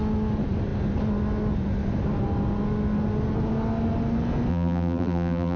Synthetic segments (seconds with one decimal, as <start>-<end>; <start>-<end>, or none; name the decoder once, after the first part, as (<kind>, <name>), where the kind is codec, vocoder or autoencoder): 4.5-5.6 (vocoder, BigVGAN v2)